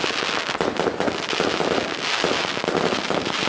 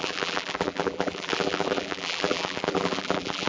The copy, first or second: second